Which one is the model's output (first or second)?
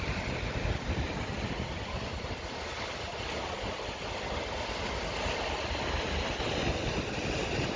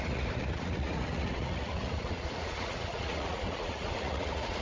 second